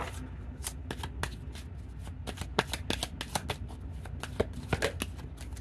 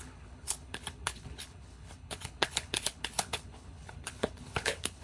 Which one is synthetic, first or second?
second